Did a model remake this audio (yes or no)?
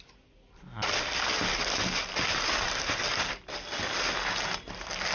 no